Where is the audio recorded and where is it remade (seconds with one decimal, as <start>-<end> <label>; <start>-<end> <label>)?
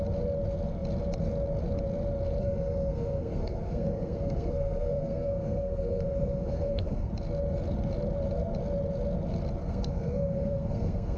0.0-2.4 recorded; 2.4-7.1 remade; 7.1-9.6 recorded; 9.6-11.2 remade